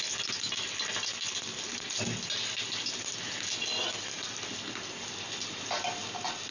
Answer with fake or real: real